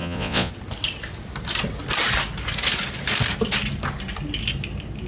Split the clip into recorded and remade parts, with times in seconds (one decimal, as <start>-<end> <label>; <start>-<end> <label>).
0.0-0.5 remade; 0.5-5.1 recorded